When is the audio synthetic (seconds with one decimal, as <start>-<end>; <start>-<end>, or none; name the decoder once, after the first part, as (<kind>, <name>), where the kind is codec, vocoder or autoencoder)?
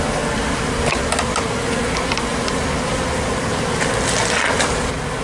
none